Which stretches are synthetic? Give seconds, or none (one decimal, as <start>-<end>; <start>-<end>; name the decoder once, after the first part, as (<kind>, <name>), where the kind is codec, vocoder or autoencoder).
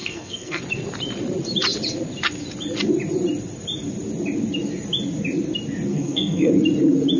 0.0-0.6 (codec, SNAC); 5.9-6.5